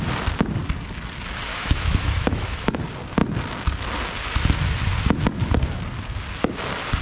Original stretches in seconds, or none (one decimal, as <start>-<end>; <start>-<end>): 0.0-1.5; 2.8-7.0